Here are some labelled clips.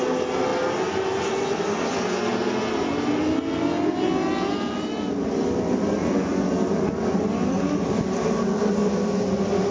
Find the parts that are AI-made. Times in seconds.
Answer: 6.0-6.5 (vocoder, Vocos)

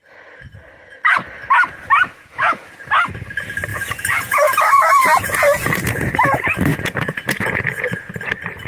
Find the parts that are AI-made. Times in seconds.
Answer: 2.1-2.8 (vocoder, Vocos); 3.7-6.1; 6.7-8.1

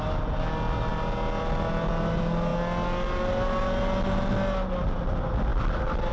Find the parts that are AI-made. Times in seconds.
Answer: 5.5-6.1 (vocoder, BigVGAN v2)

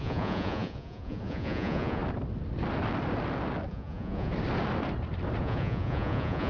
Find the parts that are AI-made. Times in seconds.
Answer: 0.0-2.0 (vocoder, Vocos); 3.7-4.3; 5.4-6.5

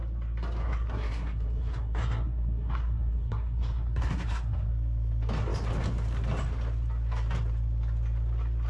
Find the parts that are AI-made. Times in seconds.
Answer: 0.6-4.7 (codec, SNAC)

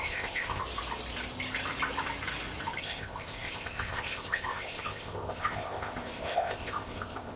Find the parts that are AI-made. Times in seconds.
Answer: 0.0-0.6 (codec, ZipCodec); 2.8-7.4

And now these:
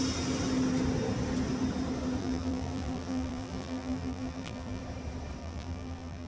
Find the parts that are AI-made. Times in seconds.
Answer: 2.2-4.8 (vocoder, BigVGAN v2); 5.4-6.3

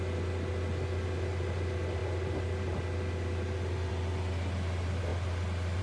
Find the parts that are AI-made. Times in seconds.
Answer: none